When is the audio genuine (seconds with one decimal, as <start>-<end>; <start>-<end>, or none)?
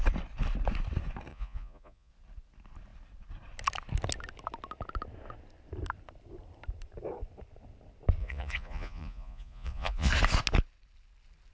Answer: 0.0-1.3; 2.1-8.2; 10.1-11.5